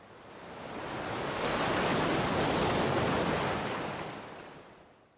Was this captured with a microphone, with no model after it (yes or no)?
yes